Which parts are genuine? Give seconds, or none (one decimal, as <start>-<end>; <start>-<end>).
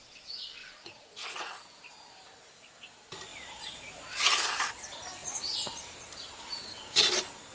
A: 0.0-0.6; 1.8-5.2; 5.8-7.5